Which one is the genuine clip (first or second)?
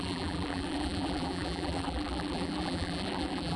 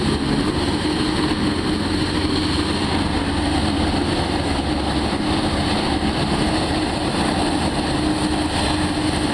second